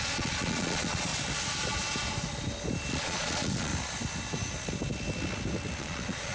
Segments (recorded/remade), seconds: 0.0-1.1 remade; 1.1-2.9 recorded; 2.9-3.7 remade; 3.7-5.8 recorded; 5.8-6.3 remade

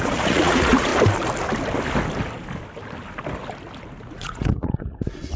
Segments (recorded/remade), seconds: 0.0-0.9 remade; 0.9-4.0 recorded; 4.0-5.4 remade

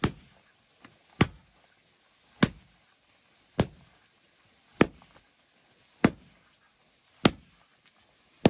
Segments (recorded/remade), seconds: 0.0-8.5 recorded

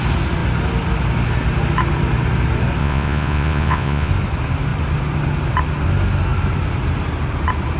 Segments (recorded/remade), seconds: 0.0-2.8 recorded; 2.8-4.1 remade; 4.1-7.8 recorded

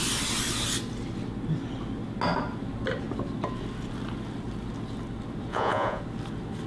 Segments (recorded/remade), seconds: 0.0-5.5 recorded; 5.5-6.0 remade; 6.0-6.7 recorded